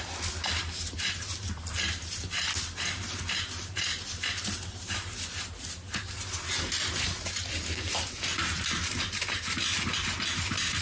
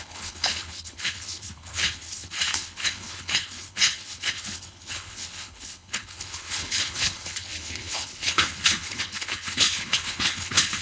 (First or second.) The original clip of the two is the first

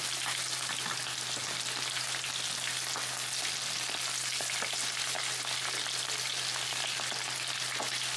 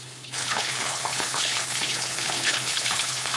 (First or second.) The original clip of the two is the first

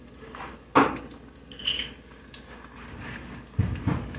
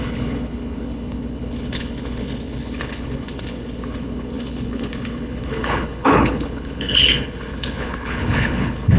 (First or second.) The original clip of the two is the first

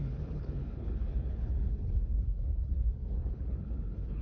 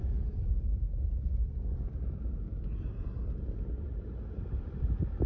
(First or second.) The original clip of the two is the second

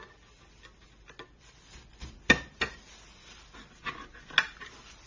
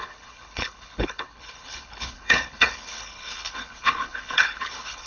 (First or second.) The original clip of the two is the first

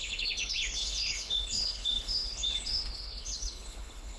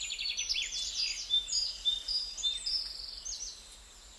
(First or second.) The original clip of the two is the second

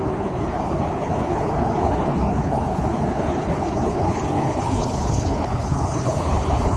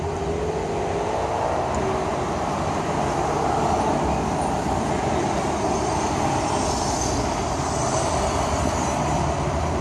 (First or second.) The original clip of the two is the second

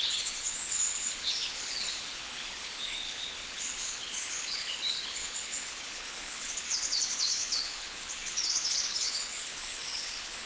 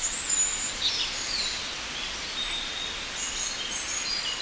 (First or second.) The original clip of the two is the second